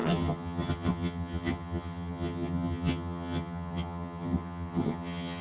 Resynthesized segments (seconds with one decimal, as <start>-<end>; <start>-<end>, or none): 0.0-5.4